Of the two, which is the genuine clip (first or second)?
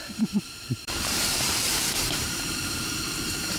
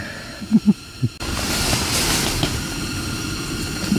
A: second